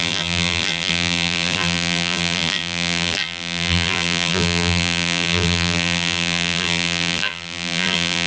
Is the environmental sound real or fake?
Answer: fake